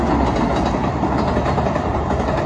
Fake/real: real